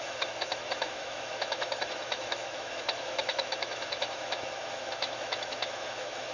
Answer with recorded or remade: remade